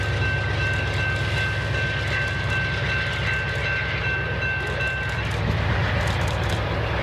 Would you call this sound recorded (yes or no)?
yes